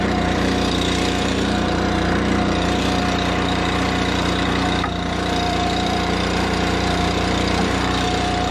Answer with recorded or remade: remade